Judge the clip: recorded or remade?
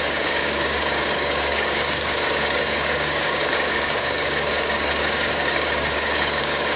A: remade